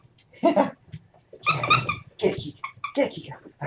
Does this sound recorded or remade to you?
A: recorded